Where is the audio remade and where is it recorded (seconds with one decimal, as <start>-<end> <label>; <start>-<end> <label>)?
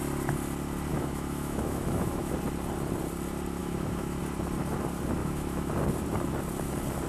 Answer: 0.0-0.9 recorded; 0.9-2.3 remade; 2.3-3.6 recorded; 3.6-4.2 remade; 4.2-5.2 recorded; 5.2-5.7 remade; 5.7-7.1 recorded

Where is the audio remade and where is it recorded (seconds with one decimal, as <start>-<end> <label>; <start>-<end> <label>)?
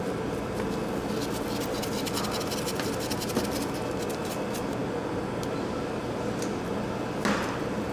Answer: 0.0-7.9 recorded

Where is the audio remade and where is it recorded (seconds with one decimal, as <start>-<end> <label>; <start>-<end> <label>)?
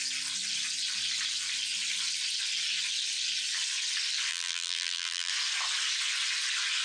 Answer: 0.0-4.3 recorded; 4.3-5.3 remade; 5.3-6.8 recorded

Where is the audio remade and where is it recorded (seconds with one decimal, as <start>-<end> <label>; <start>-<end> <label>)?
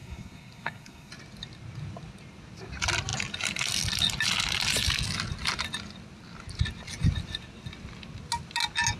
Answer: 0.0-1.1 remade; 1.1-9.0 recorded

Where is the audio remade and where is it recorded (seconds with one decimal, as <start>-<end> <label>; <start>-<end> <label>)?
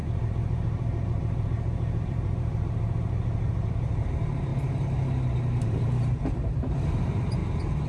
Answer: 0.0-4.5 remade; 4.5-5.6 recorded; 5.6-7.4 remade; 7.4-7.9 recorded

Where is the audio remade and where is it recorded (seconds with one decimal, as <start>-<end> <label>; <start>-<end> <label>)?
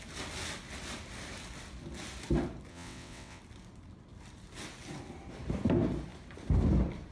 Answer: 0.0-2.7 recorded; 2.7-3.4 remade; 3.4-7.1 recorded